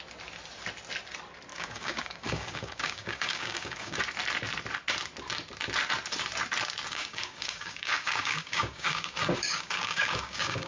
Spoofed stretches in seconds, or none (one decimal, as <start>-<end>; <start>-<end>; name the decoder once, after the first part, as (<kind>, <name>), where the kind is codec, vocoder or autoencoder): 1.5-4.0 (codec, DAC); 6.9-10.7